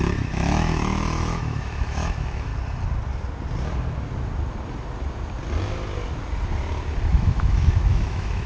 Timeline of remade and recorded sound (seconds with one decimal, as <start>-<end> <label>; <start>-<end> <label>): 0.0-2.5 remade; 2.5-7.1 recorded; 7.1-8.5 remade